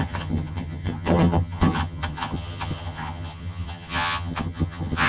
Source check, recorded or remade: remade